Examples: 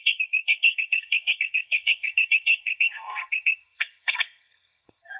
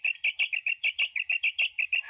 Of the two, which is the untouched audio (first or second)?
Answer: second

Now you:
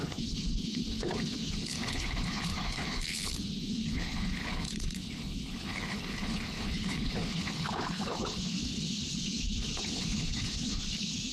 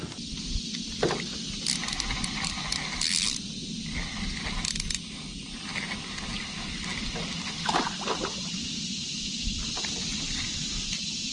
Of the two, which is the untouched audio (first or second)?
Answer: second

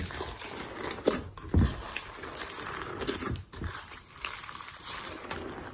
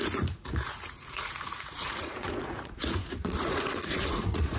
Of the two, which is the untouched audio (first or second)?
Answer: first